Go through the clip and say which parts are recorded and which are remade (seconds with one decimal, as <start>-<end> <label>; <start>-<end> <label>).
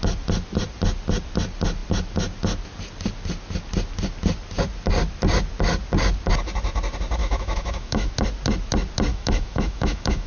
0.0-7.2 recorded; 7.2-8.1 remade; 8.1-9.1 recorded; 9.1-10.3 remade